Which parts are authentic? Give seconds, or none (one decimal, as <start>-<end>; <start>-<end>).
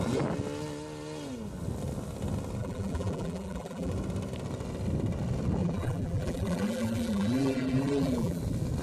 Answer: 0.0-2.6; 3.9-5.6; 8.4-8.8